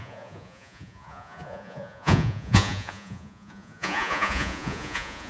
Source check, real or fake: fake